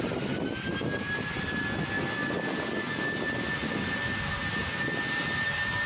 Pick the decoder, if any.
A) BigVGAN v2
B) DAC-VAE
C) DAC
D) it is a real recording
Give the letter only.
D